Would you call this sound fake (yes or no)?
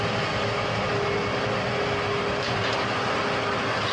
no